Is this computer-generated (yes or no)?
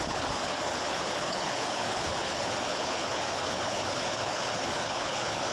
yes